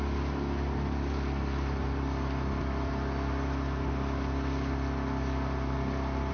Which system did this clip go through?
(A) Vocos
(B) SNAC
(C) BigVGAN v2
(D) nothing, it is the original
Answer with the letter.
D